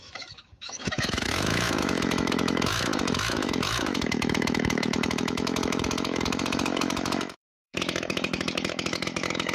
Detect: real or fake fake